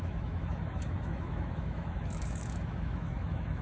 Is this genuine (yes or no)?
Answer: no